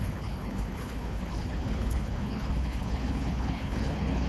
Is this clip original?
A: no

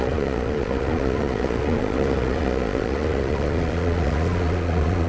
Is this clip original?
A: no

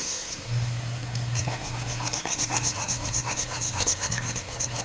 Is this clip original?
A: no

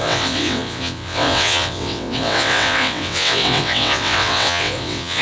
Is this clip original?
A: no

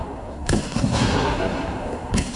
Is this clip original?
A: no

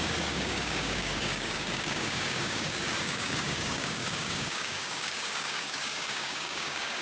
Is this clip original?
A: no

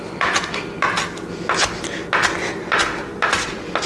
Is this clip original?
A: yes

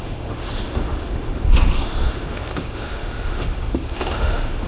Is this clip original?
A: no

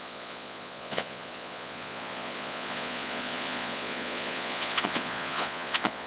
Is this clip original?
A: no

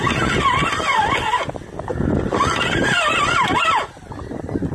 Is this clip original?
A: yes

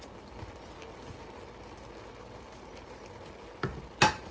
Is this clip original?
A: yes